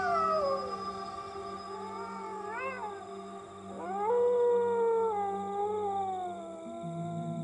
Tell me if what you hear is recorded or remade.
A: recorded